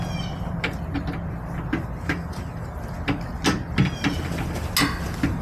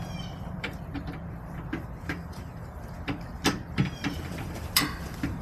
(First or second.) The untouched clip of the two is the first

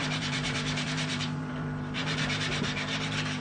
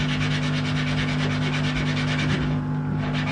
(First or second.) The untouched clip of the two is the second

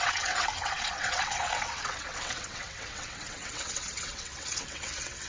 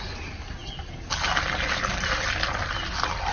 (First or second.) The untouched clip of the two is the second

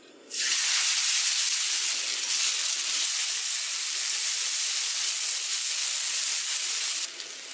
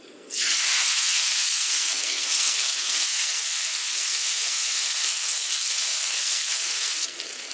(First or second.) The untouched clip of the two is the first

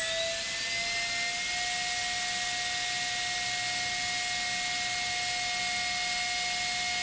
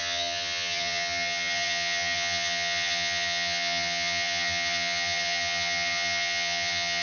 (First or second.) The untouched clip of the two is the first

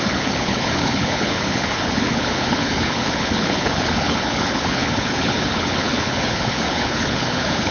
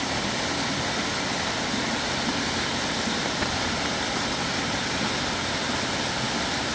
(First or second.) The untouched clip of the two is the second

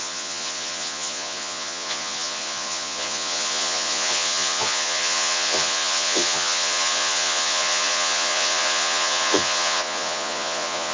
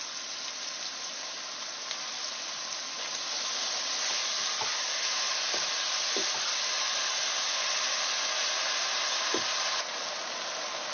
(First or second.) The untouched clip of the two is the second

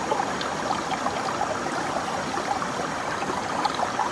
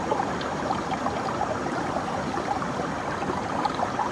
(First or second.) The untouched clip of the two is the first